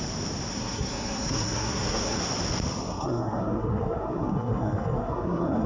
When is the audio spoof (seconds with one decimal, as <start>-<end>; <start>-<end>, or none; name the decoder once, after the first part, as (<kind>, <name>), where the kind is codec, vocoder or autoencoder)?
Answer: 0.5-2.2 (codec, SNAC); 2.9-5.7